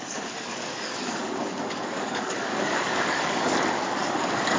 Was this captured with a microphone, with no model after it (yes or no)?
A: no